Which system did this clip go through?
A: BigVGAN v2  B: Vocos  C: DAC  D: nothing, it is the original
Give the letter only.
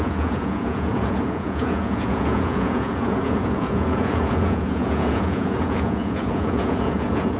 B